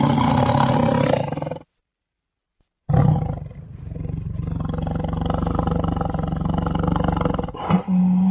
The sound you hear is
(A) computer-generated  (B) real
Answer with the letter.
B